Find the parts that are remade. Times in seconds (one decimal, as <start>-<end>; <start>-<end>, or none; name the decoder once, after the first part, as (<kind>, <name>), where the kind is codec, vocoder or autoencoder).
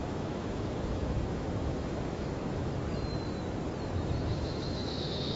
0.0-2.7 (autoencoder, DAC-VAE); 4.2-5.4